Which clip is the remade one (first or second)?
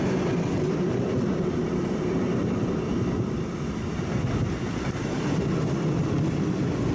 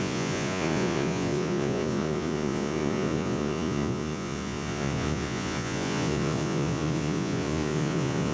second